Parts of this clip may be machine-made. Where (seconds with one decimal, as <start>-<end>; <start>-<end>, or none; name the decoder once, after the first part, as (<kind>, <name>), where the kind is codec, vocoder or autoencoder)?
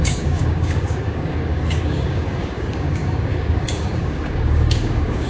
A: 0.0-5.3 (codec, DAC)